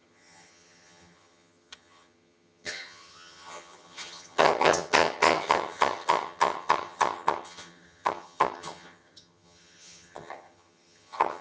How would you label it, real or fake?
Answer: fake